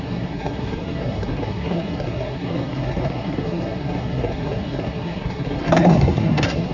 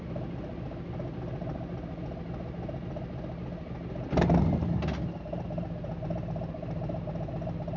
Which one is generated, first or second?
first